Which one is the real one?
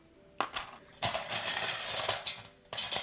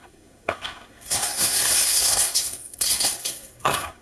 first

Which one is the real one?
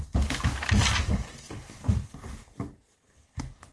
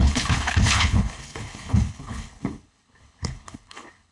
first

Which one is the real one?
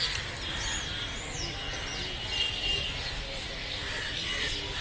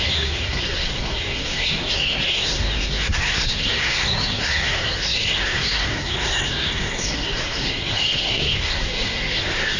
first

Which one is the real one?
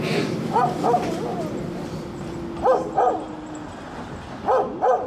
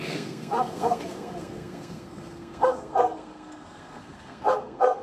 first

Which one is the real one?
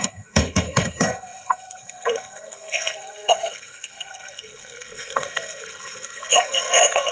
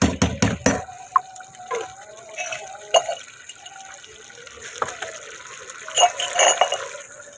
second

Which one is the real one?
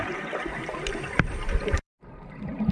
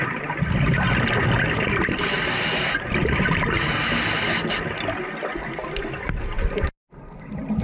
second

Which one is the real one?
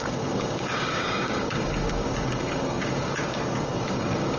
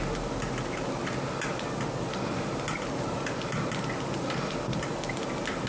second